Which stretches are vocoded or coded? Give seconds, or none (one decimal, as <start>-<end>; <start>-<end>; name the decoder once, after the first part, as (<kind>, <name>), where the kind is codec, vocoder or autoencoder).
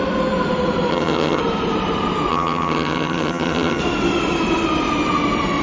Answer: 0.9-1.4 (vocoder, HiFi-GAN); 2.3-3.8